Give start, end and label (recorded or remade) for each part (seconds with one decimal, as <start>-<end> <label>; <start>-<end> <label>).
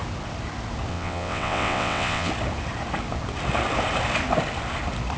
0.0-0.9 recorded; 0.9-2.3 remade; 2.3-5.2 recorded